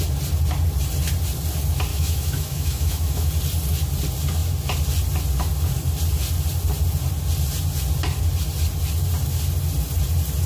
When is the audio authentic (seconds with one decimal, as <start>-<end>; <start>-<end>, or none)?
0.0-1.9; 3.3-10.5